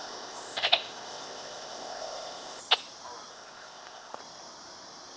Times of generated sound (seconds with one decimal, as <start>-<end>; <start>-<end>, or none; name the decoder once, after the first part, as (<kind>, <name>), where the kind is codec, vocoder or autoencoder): 0.0-2.6 (codec, ZipCodec); 3.3-4.2